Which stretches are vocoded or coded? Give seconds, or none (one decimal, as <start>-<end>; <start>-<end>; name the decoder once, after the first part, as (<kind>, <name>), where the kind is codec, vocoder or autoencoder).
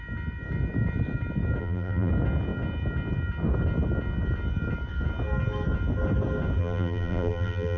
1.6-2.1 (vocoder, BigVGAN v2); 6.6-7.8